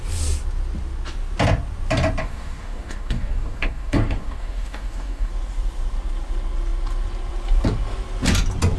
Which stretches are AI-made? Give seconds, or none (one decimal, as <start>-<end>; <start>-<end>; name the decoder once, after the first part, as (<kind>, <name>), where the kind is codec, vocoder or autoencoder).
2.2-5.3 (codec, DAC)